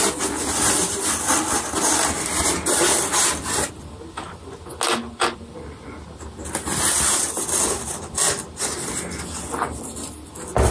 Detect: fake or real real